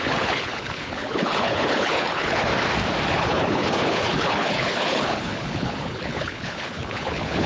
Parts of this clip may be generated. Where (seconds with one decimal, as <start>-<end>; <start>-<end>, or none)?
0.0-2.5; 3.1-7.5